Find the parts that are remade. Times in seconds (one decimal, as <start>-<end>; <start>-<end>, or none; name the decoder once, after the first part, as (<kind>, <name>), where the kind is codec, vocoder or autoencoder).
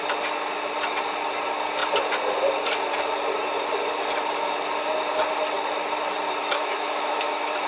6.4-7.7 (autoencoder, DAC-VAE)